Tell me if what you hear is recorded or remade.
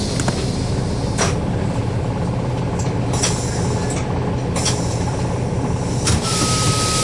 recorded